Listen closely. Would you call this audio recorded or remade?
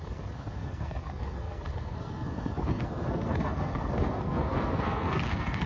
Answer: remade